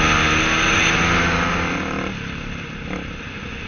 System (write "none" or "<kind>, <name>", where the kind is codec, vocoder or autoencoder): none